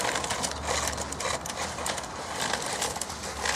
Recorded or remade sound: recorded